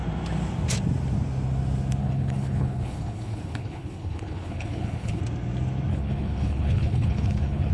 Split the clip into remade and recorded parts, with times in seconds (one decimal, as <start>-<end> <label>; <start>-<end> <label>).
0.0-2.0 recorded; 2.0-5.2 remade; 5.2-5.9 recorded; 5.9-7.7 remade